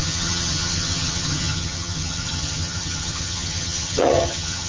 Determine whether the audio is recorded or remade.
remade